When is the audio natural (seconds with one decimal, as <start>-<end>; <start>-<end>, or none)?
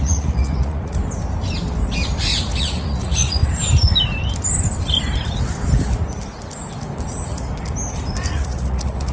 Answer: 1.0-2.6; 3.4-8.3